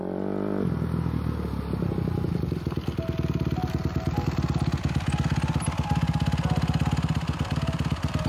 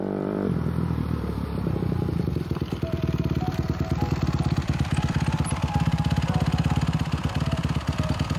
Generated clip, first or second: second